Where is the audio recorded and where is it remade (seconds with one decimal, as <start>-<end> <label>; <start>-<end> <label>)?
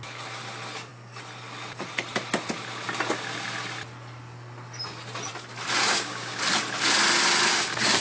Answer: 0.0-5.8 recorded; 5.8-6.4 remade; 6.4-7.5 recorded; 7.5-8.0 remade